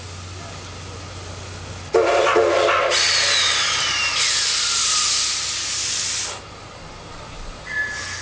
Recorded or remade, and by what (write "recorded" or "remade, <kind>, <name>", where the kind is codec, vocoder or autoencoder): recorded